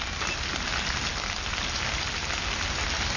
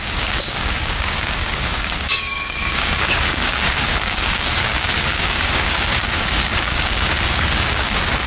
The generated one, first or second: second